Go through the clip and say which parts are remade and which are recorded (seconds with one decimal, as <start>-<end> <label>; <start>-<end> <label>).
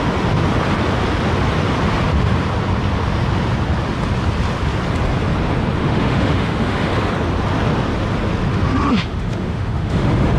0.0-5.8 recorded; 5.8-6.9 remade; 6.9-8.5 recorded; 8.5-10.4 remade